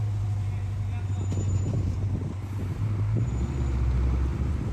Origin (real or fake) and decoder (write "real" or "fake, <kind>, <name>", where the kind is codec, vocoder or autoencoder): real